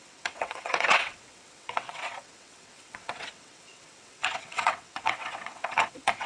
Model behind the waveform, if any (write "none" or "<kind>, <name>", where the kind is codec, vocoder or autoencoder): vocoder, WaveNeXt